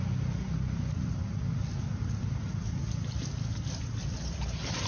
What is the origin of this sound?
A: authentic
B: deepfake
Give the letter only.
A